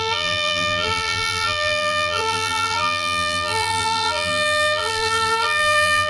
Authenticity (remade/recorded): remade